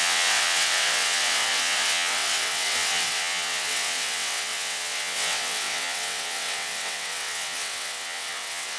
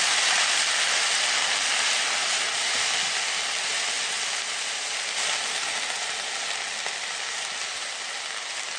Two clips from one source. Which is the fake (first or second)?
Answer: first